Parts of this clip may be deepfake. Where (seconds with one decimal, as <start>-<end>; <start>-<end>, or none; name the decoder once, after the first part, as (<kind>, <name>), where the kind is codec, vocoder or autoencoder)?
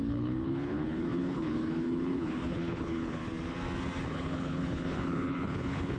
0.0-3.2 (codec, HILCodec); 4.1-6.0